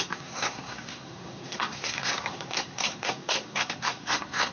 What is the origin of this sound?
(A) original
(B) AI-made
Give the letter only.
B